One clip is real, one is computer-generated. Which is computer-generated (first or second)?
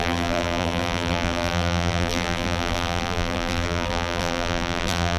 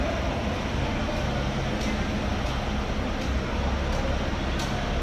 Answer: first